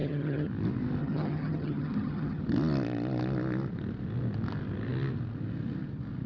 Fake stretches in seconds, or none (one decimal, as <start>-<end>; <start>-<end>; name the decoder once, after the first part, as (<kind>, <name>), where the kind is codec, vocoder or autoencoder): 0.0-0.5 (vocoder, HiFi-GAN); 1.0-2.4